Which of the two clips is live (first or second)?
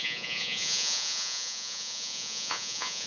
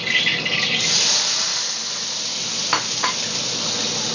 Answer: second